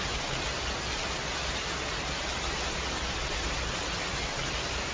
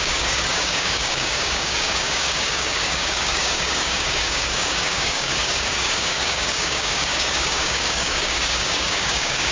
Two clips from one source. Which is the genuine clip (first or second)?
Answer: first